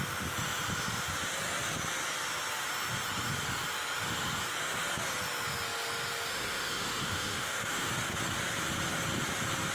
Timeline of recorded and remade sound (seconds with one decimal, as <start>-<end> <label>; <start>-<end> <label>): 0.0-6.3 recorded; 6.3-7.9 remade; 7.9-9.7 recorded